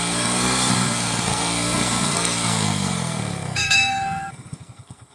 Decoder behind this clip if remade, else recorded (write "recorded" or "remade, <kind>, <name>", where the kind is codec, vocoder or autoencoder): remade, codec, SNAC